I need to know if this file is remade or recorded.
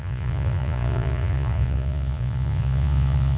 remade